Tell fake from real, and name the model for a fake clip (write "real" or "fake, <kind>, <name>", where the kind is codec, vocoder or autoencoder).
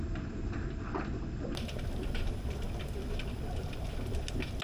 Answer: real